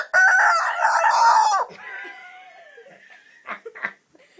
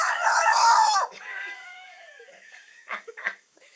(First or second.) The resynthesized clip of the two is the second